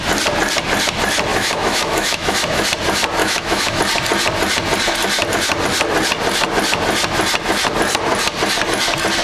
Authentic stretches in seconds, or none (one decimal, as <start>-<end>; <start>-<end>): 0.0-1.3; 2.6-3.2; 3.8-9.2